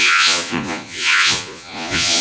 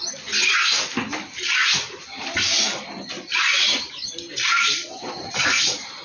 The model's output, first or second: first